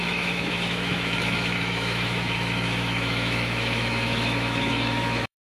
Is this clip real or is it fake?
fake